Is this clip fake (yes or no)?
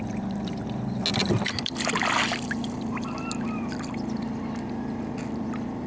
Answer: no